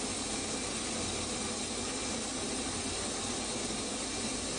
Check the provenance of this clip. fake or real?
real